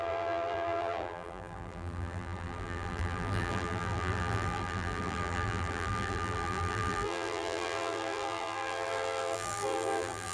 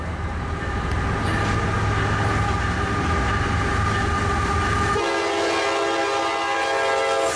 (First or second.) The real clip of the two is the second